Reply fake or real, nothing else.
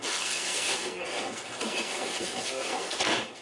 fake